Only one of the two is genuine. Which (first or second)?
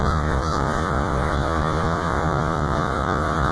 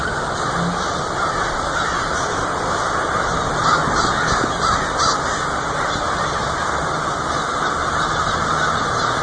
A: second